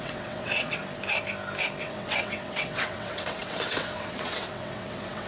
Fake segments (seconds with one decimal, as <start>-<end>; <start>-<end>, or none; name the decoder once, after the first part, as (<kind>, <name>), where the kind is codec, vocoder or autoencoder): 0.0-0.8 (vocoder, WaveNeXt); 1.8-5.3